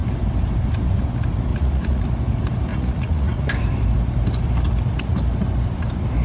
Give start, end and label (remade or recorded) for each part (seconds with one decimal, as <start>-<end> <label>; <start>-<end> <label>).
0.0-1.5 recorded; 1.5-2.0 remade; 2.0-2.7 recorded; 2.7-3.5 remade; 3.5-6.2 recorded